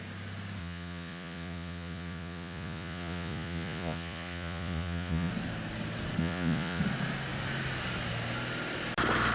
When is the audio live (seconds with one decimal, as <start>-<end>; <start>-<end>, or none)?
0.0-0.6; 5.3-6.2; 6.8-9.3